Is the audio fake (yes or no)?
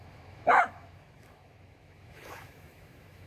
yes